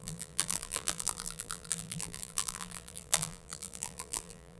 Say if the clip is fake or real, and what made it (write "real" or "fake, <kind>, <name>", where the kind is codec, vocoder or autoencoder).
fake, vocoder, BigVGAN v2